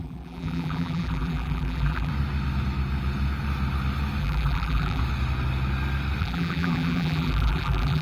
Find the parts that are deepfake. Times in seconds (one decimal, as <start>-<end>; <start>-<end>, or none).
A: 0.0-2.1; 4.2-5.0; 6.2-8.0